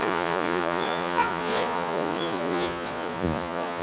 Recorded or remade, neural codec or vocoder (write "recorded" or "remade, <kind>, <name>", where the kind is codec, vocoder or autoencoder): remade, vocoder, Vocos